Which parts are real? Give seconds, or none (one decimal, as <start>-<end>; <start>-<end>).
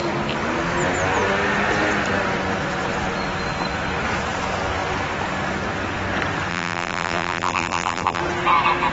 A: 0.0-6.5; 8.2-8.9